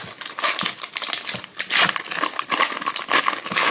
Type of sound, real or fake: real